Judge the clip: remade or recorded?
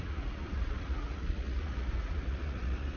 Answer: remade